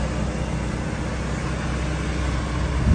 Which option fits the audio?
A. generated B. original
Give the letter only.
B